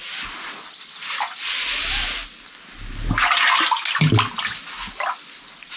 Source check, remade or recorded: recorded